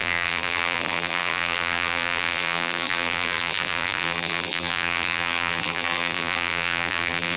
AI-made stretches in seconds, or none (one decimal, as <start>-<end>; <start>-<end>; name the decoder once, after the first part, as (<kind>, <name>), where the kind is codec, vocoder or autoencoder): 0.0-7.4 (vocoder, BigVGAN v2)